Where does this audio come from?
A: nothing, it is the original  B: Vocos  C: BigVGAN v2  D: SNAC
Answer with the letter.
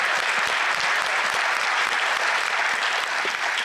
A